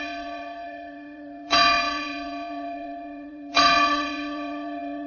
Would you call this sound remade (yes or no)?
yes